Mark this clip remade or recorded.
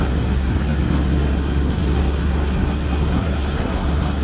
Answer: remade